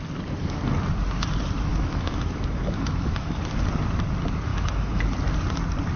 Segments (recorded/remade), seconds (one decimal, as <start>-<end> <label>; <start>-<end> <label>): 0.0-1.7 recorded; 1.7-3.4 remade; 3.4-4.5 recorded; 4.5-5.0 remade; 5.0-6.0 recorded